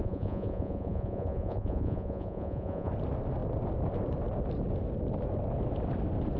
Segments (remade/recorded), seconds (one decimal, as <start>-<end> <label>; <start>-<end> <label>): 0.0-2.9 remade; 2.9-6.4 recorded